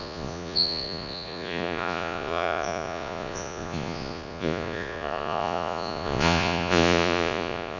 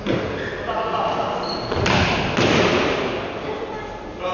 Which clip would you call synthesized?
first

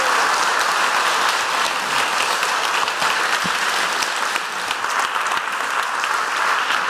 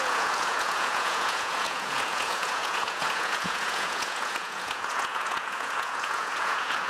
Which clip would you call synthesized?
second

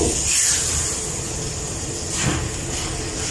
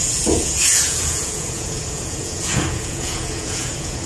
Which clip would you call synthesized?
second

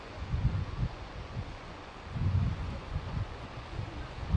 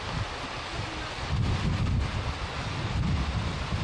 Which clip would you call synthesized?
first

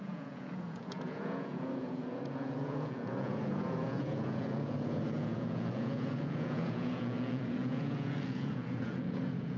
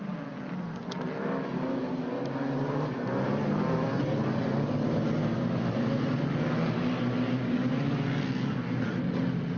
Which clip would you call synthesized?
first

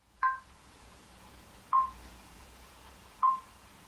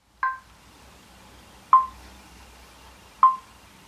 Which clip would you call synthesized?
first